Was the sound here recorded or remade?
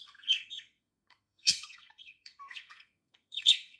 remade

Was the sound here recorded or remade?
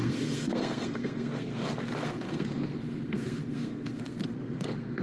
remade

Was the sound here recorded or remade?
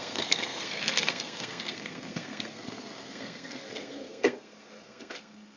remade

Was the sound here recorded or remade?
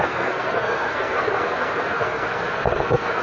remade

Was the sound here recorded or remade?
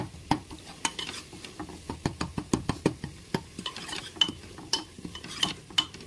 recorded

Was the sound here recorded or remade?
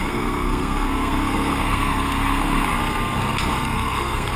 remade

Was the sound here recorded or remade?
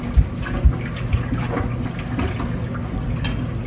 recorded